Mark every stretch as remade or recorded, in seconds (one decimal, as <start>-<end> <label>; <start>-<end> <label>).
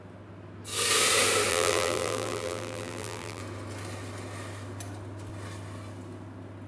0.0-1.5 recorded; 1.5-3.4 remade; 3.4-6.7 recorded